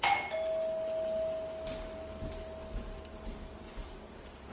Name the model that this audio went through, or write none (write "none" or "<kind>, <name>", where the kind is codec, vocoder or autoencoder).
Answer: none